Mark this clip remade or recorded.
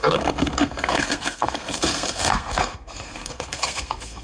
remade